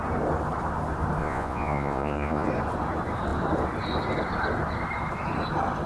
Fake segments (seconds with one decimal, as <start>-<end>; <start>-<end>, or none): 1.2-2.5